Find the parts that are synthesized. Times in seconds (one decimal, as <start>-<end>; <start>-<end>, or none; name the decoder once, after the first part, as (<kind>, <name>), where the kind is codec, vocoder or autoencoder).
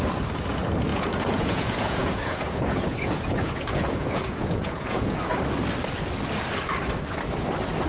0.9-5.4 (vocoder, Vocos)